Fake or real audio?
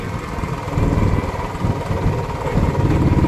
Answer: real